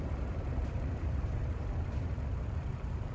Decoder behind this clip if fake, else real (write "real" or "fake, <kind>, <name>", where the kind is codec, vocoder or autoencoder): fake, vocoder, BigVGAN v2